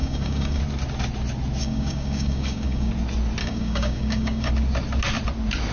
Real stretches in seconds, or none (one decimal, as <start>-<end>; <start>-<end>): 0.6-1.6; 2.9-3.4; 4.5-5.7